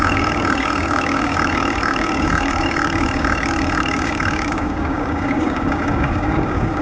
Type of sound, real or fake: fake